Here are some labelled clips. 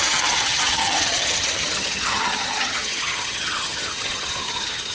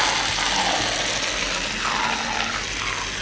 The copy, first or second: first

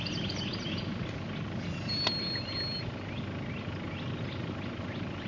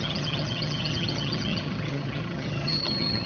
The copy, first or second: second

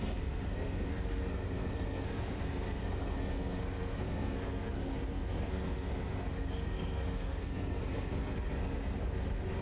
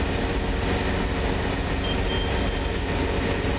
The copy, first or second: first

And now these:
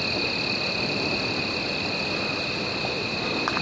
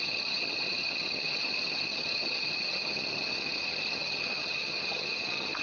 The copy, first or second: second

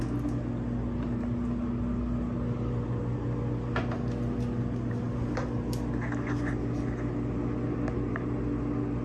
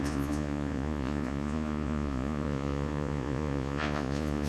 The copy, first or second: second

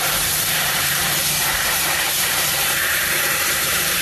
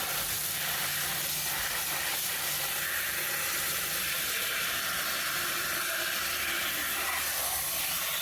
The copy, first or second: first